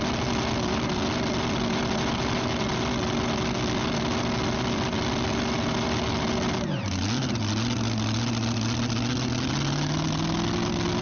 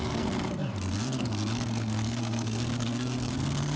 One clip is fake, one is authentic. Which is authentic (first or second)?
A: first